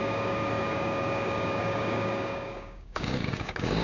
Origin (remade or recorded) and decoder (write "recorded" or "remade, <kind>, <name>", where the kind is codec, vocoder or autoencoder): remade, codec, DAC